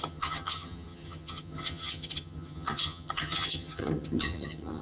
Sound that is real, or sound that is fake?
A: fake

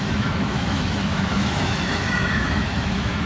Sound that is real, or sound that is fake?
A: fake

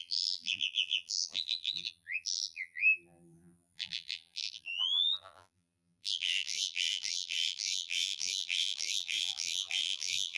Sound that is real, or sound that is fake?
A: fake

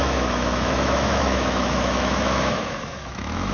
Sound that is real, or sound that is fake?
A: fake